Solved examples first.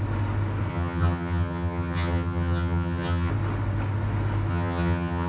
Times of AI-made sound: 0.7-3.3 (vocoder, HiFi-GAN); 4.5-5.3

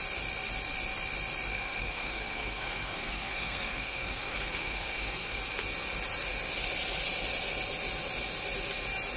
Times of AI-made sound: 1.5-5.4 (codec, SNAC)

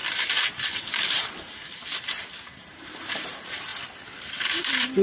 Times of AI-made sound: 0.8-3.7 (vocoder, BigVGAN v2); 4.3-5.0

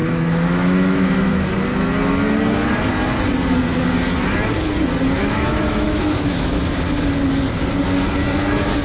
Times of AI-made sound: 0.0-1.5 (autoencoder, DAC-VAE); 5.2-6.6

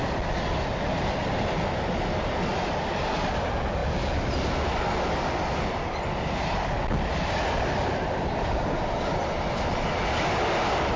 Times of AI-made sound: none